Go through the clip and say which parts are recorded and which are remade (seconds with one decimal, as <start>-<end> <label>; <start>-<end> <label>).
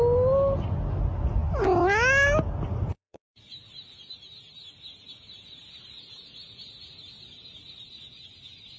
0.0-2.9 recorded; 2.9-3.5 remade; 3.5-8.8 recorded